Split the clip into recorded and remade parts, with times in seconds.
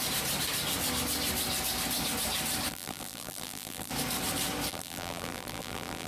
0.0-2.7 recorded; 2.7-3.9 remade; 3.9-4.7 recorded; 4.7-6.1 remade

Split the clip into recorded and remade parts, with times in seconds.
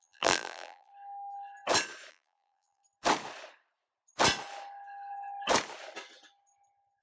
0.0-0.9 remade; 0.9-2.1 recorded; 2.1-2.8 remade; 2.8-7.0 recorded